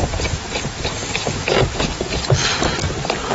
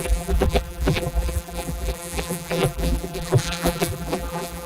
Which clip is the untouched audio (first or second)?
first